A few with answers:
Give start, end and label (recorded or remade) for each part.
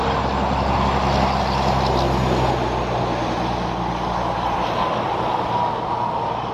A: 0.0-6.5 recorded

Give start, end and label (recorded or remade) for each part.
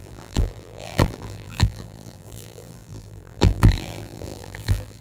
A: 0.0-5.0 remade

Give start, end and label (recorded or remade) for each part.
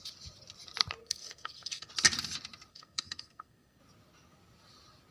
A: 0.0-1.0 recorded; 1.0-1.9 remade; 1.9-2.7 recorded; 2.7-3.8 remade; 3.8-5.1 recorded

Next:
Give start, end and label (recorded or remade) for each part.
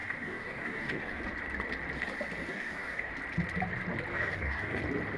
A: 0.0-1.2 remade; 1.2-2.5 recorded; 2.5-3.1 remade; 3.1-4.1 recorded; 4.1-4.8 remade; 4.8-5.2 recorded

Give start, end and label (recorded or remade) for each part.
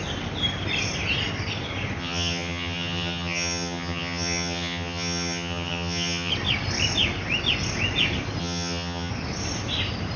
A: 0.0-2.0 recorded; 2.0-6.3 remade; 6.3-8.4 recorded; 8.4-9.1 remade; 9.1-10.2 recorded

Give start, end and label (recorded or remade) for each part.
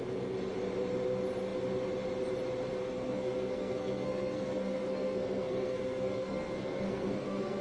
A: 0.0-2.7 recorded; 2.7-7.6 remade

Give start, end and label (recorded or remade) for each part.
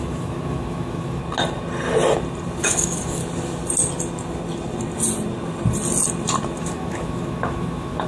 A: 0.0-1.2 remade; 1.2-2.6 recorded; 2.6-3.2 remade; 3.2-6.6 recorded; 6.6-8.1 remade